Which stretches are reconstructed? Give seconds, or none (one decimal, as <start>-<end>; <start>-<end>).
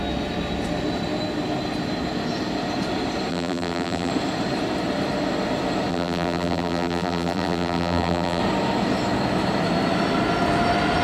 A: 3.3-4.1; 5.9-8.4